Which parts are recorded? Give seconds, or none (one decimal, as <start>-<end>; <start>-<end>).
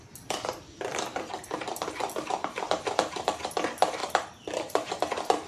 0.0-0.9; 3.5-4.0; 5.0-5.5